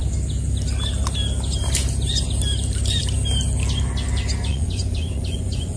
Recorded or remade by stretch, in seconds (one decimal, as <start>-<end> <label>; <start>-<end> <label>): 0.0-4.5 recorded; 4.5-5.8 remade